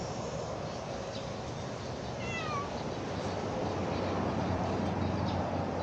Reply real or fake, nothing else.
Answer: real